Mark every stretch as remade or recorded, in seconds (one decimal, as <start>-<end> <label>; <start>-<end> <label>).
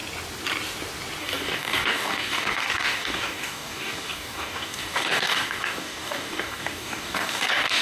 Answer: 0.0-1.2 recorded; 1.2-7.8 remade